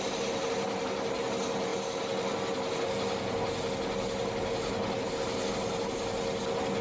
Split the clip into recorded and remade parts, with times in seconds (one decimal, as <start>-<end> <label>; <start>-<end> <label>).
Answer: 0.0-6.8 recorded